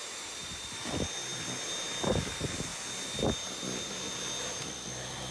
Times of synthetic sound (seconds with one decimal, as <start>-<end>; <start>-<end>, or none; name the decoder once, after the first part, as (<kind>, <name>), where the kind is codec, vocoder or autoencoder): 0.4-0.9 (vocoder, BigVGAN v2)